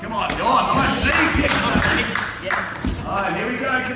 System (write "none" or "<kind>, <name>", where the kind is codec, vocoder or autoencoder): none